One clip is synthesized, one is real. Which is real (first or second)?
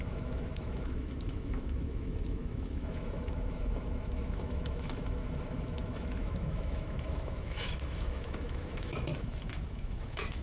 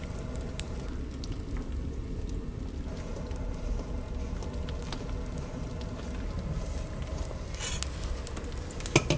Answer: second